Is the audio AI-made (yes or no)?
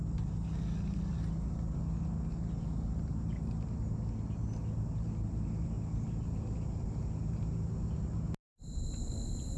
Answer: no